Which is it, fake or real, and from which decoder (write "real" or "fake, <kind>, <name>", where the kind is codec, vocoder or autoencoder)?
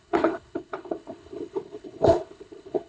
fake, codec, HILCodec